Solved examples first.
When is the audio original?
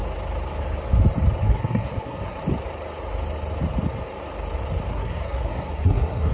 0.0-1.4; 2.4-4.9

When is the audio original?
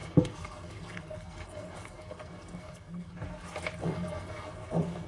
3.1-3.8